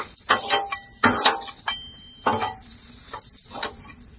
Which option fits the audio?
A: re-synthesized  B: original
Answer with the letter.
B